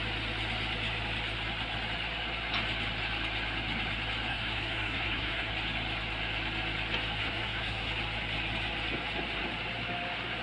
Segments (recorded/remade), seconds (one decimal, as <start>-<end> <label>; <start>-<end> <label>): 0.0-4.3 recorded; 4.3-5.5 remade; 5.5-7.2 recorded; 7.2-7.9 remade; 7.9-10.4 recorded